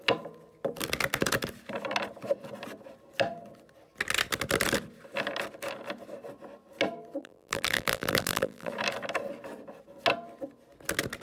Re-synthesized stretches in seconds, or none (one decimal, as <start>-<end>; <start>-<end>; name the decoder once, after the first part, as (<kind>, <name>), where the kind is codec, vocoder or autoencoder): 7.2-8.7 (vocoder, BigVGAN v2)